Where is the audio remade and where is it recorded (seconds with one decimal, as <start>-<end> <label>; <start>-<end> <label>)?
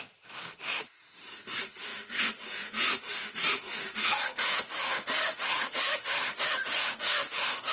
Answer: 0.0-7.7 remade